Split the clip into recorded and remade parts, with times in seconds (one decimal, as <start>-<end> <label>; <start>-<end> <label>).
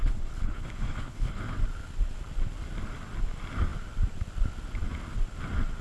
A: 0.0-1.4 remade; 1.4-5.8 recorded